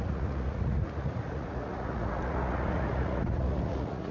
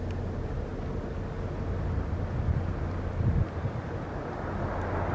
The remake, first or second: first